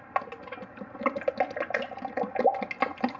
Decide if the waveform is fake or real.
real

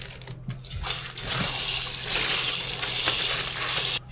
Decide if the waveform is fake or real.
real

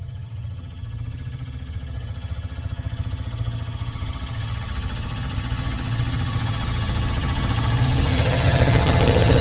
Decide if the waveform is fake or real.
fake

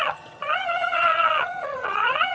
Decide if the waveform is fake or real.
fake